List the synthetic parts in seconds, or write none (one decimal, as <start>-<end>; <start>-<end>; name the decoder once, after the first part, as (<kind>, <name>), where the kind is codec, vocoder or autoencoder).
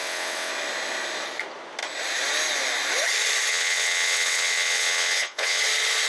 0.0-0.5 (vocoder, WaveNeXt); 3.5-5.6